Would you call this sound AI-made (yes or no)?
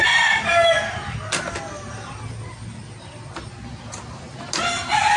no